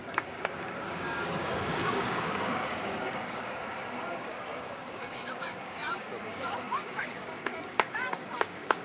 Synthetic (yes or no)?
yes